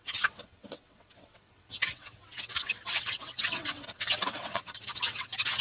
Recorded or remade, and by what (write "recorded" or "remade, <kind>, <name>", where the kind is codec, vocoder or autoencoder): remade, vocoder, WaveNeXt